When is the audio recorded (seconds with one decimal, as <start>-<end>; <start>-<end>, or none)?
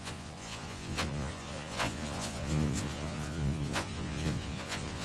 none